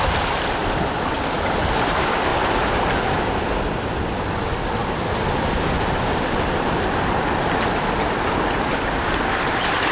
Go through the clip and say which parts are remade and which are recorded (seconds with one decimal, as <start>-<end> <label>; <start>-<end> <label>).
0.0-0.6 remade; 0.6-1.1 recorded; 1.1-2.3 remade; 2.3-3.1 recorded; 3.1-9.9 remade